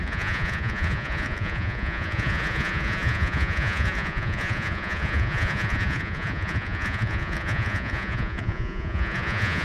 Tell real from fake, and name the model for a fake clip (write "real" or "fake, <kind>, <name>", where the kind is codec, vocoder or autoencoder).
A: fake, vocoder, Vocos